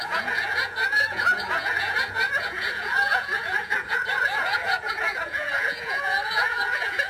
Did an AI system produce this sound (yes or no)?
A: yes